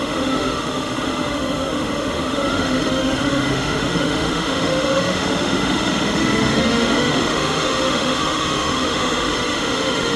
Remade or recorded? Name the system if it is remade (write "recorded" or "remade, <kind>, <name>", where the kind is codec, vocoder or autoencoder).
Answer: remade, autoencoder, DAC-VAE